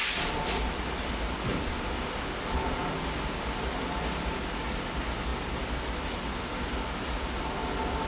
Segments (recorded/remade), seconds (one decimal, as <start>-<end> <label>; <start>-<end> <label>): 0.0-8.1 recorded